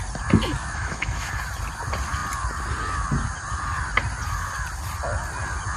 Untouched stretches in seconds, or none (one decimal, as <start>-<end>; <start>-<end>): 0.0-0.6; 1.3-5.8